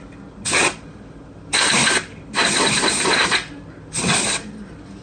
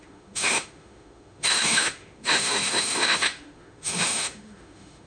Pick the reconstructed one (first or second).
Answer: second